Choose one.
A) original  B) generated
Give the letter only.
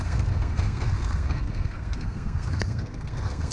B